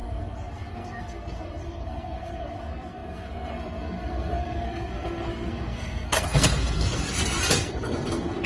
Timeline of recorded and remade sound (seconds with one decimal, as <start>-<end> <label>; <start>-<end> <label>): 0.0-8.5 remade